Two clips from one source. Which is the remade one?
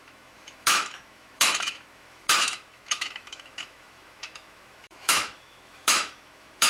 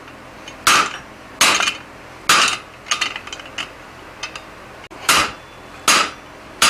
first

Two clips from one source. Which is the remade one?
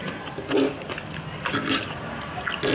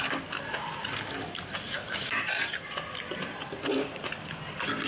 second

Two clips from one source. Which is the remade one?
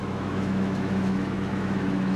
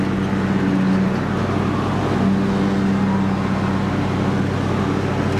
first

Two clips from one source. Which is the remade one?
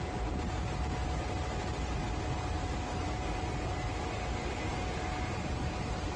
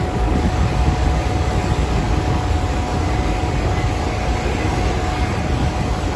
second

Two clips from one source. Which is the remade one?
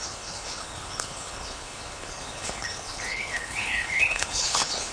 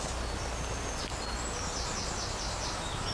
first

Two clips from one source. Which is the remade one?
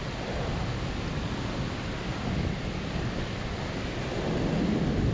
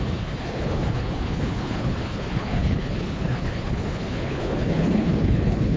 second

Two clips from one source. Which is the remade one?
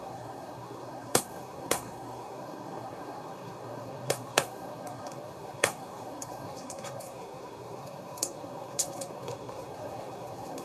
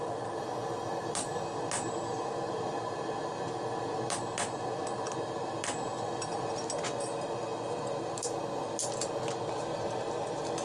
first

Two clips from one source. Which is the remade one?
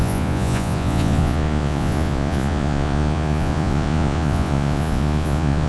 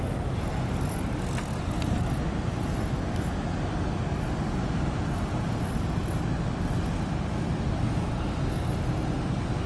first